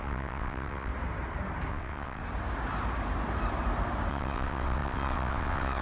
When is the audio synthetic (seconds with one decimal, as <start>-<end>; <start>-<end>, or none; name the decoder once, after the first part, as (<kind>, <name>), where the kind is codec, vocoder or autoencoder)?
0.0-0.9 (vocoder, WaveNeXt); 1.7-2.2; 4.1-5.8